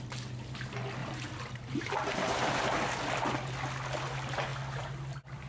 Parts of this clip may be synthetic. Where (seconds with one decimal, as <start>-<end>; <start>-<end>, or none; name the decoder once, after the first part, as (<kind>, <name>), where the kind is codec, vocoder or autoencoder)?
1.0-2.5 (vocoder, BigVGAN v2)